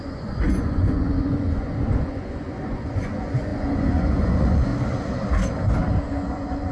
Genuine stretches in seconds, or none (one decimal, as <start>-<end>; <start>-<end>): 4.7-6.0